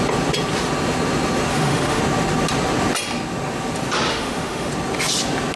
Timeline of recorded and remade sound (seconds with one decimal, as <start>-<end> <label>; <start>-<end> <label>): 0.0-1.5 recorded; 1.5-2.0 remade; 2.0-4.1 recorded; 4.1-4.7 remade; 4.7-5.6 recorded